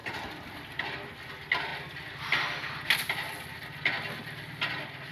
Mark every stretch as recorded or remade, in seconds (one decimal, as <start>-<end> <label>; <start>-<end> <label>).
0.0-0.8 remade; 0.8-5.1 recorded